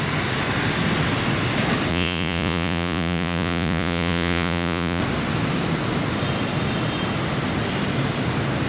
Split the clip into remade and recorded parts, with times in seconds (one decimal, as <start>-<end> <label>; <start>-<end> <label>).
0.0-1.9 recorded; 1.9-5.0 remade; 5.0-8.7 recorded